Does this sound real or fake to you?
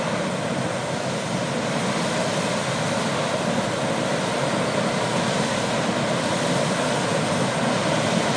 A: real